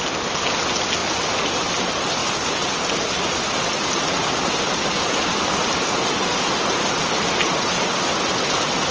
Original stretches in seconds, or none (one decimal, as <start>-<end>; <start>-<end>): 0.0-8.9

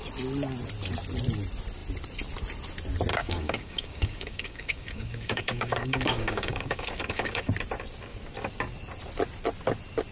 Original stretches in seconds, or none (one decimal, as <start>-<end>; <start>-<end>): 0.0-3.1; 7.5-10.1

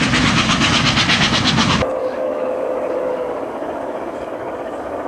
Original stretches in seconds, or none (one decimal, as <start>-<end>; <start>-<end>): 0.0-2.0

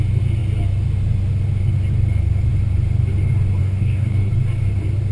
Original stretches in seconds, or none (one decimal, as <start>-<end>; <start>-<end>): 0.0-3.6; 4.3-5.1

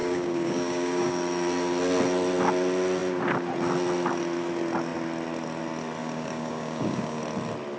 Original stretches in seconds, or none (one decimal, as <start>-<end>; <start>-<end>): 1.1-6.0; 7.2-7.8

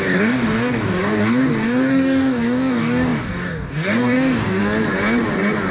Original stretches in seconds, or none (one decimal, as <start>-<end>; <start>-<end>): 4.6-5.7

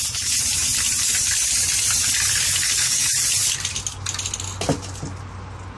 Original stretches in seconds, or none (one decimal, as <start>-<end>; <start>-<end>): 0.0-5.8

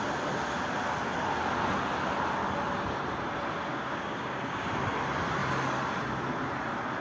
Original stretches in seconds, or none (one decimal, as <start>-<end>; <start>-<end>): 0.0-3.7; 4.7-7.0